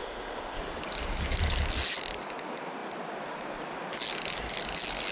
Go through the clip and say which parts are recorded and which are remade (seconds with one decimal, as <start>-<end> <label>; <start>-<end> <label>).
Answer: 0.0-0.6 remade; 0.6-5.1 recorded